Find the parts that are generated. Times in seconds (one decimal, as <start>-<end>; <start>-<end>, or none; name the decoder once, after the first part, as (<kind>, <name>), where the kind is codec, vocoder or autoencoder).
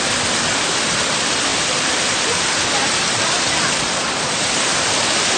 none